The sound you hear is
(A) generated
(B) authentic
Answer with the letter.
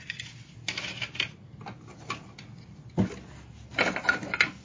B